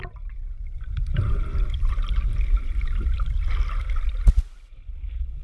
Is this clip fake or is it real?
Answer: real